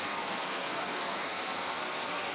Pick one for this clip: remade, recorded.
remade